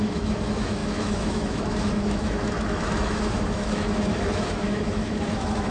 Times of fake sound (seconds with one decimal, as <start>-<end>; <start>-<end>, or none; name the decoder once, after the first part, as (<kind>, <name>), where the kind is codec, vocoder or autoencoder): 0.0-5.7 (autoencoder, DAC-VAE)